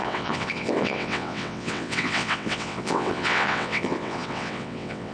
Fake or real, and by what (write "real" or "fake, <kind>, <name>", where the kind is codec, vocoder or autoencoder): fake, vocoder, WaveNeXt